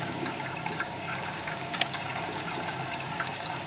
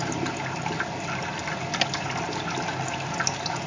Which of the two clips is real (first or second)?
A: second